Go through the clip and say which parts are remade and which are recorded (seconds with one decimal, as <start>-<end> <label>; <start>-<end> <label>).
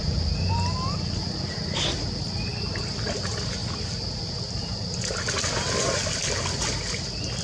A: 0.0-7.4 recorded